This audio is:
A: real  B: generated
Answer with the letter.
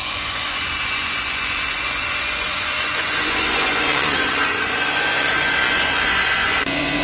B